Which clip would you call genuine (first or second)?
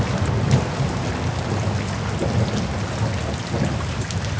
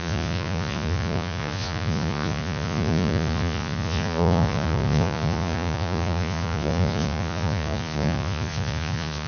first